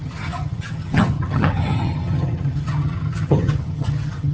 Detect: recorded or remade remade